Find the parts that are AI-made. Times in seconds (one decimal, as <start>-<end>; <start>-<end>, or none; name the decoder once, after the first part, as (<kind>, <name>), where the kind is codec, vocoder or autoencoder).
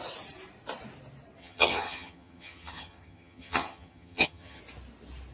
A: 1.4-4.6 (vocoder, HiFi-GAN)